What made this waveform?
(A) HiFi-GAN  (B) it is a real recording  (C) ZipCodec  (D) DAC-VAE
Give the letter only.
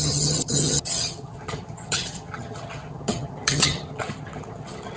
A